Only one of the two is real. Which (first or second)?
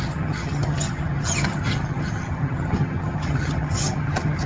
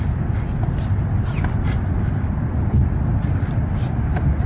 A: second